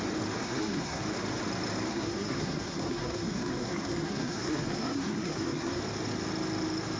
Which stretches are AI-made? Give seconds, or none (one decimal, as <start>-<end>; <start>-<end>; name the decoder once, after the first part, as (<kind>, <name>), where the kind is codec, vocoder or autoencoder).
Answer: 0.4-1.0 (codec, SNAC); 1.9-5.8